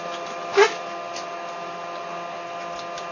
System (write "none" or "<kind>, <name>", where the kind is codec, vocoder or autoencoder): none